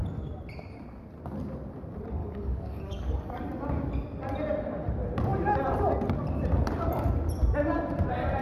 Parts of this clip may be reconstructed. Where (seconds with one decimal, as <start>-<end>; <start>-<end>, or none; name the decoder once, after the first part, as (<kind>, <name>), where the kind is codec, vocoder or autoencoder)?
2.2-3.4 (codec, DAC)